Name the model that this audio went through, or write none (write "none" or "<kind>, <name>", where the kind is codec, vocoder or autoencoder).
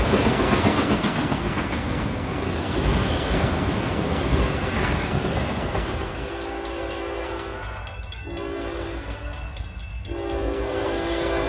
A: codec, SNAC